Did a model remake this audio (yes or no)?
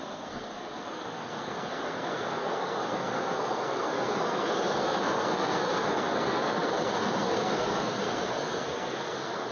yes